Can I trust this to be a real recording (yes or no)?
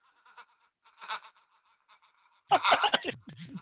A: yes